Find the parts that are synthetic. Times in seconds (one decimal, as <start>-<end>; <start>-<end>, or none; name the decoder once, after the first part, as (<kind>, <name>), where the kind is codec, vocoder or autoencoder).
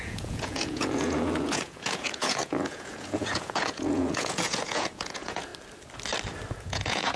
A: 0.0-5.5 (vocoder, Vocos); 6.5-7.2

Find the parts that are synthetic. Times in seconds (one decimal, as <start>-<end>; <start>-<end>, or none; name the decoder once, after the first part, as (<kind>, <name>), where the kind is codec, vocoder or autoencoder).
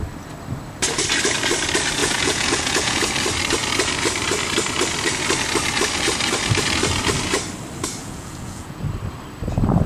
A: 2.0-3.1 (vocoder, Vocos); 8.0-8.8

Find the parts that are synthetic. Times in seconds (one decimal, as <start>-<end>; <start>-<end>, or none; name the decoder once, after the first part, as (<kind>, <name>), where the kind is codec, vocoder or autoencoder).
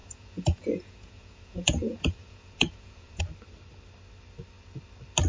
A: 0.0-3.2 (vocoder, Vocos)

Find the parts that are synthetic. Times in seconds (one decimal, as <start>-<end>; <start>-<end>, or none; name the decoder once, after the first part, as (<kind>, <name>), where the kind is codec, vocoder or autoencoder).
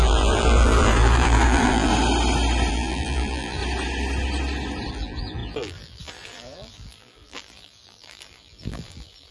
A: 0.0-1.9 (vocoder, BigVGAN v2); 2.7-3.6; 4.9-9.3